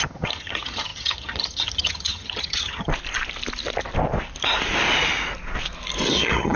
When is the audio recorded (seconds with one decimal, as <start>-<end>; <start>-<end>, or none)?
2.9-6.1